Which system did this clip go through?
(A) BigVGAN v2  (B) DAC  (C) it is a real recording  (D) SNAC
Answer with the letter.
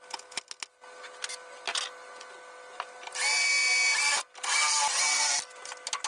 C